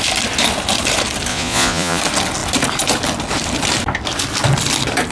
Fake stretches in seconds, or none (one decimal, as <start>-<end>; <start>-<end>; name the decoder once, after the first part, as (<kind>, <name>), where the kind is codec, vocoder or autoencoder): 1.3-2.0 (vocoder, Vocos)